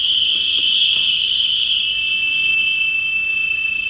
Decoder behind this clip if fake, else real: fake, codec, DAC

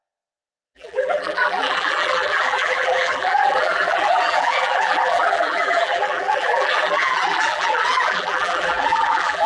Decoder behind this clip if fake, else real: fake, vocoder, BigVGAN v2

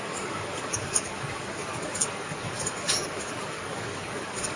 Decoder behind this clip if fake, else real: fake, codec, DAC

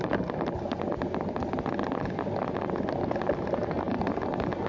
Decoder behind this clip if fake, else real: real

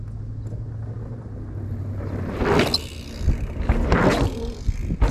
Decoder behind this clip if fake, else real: real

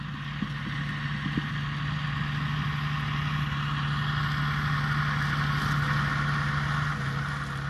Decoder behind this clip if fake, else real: real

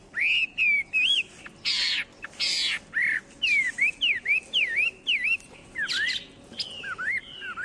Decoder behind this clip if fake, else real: real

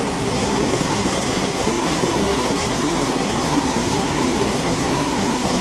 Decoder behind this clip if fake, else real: fake, codec, SNAC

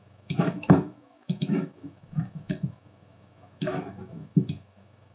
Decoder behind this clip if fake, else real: fake, autoencoder, DAC-VAE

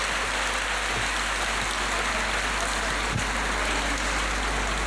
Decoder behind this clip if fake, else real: real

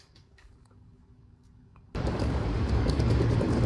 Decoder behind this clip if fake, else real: fake, codec, DAC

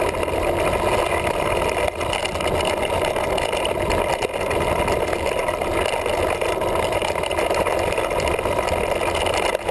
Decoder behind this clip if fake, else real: real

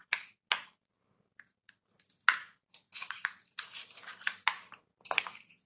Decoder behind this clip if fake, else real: real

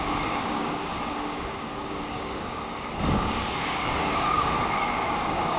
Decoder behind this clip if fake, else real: fake, codec, DAC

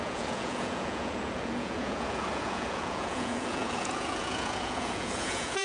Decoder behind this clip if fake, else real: fake, vocoder, Vocos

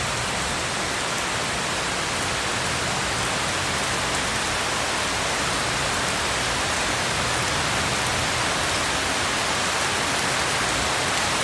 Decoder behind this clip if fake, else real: real